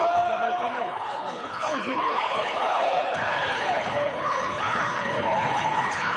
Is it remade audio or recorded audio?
remade